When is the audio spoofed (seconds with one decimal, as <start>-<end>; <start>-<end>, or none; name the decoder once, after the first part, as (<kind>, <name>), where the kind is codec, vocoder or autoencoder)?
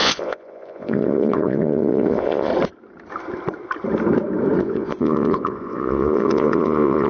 0.0-2.5 (vocoder, Vocos); 4.6-7.1